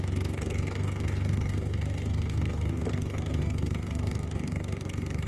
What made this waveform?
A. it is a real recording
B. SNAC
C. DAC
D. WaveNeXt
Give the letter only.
C